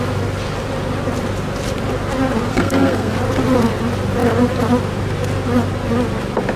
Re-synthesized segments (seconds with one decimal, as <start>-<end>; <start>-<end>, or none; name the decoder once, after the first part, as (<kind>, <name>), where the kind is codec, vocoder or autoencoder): 2.5-3.1 (codec, SNAC)